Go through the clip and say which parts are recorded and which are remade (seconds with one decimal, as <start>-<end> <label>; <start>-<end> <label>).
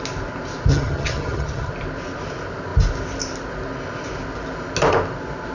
0.0-0.7 recorded; 0.7-1.7 remade; 1.7-5.5 recorded